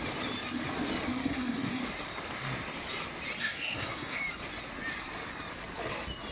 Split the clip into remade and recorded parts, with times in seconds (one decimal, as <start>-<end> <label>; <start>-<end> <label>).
0.0-1.1 recorded; 1.1-1.8 remade; 1.8-3.4 recorded; 3.4-4.2 remade; 4.2-6.3 recorded